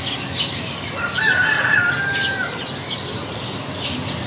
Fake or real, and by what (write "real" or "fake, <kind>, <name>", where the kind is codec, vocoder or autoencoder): real